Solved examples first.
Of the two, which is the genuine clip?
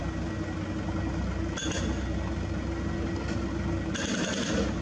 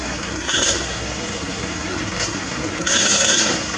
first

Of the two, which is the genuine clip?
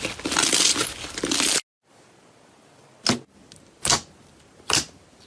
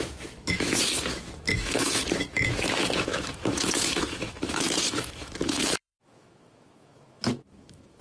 first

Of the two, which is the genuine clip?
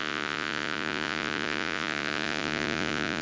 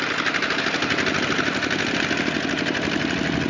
second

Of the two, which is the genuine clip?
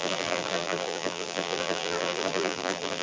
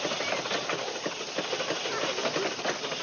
second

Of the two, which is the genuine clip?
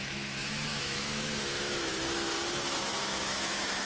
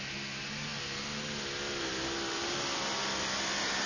second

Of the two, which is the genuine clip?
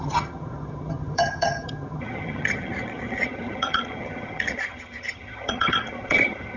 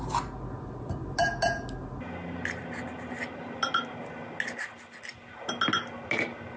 second